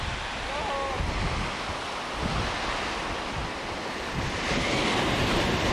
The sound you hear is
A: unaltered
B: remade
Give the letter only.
A